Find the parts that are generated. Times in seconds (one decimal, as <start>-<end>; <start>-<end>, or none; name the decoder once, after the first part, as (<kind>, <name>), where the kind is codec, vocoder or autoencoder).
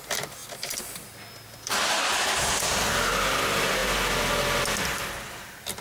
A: none